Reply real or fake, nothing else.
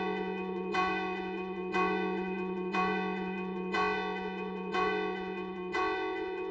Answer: fake